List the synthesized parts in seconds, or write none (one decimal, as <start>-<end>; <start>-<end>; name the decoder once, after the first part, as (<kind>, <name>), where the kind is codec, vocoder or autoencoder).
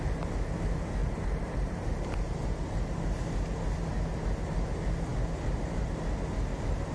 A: 1.0-1.9 (vocoder, BigVGAN v2)